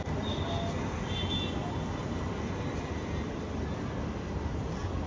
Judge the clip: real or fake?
real